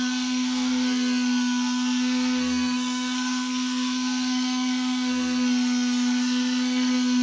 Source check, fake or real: fake